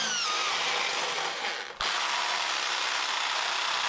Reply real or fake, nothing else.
real